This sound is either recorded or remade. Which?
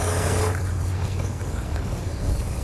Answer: remade